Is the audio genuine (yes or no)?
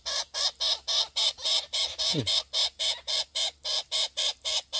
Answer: yes